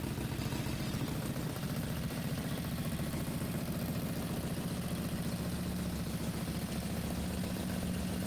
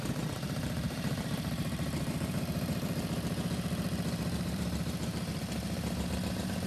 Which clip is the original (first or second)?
first